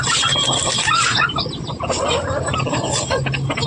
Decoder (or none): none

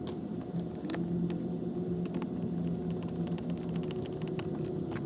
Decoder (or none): none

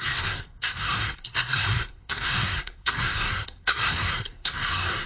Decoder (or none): codec, SNAC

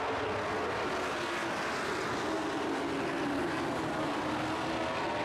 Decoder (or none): none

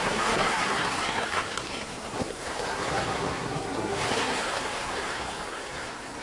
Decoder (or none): codec, SNAC